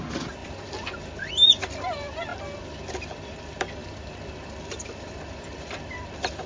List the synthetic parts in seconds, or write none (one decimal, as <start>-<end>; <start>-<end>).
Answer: none